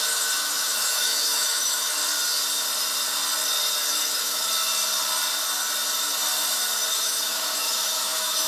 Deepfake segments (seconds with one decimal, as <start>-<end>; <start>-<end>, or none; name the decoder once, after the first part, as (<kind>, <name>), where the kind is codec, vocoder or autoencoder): 0.0-2.0 (autoencoder, DAC-VAE); 3.9-4.5; 6.9-8.5